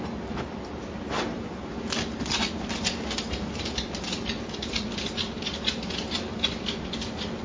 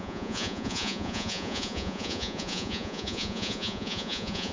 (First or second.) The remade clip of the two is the second